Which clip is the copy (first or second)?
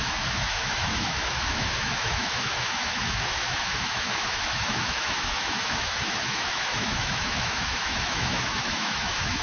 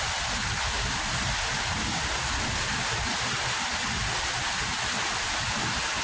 first